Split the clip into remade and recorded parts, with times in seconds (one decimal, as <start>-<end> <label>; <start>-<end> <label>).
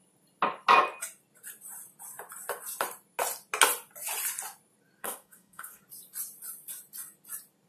0.0-5.0 recorded; 5.0-5.8 remade; 5.8-7.7 recorded